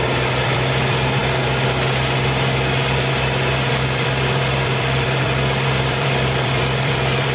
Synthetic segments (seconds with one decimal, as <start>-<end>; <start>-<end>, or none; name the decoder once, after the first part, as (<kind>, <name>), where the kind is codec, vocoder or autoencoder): 0.0-1.2 (vocoder, BigVGAN v2); 3.7-7.3